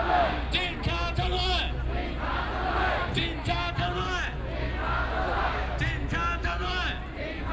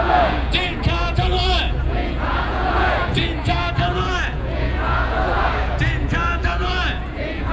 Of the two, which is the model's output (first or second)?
second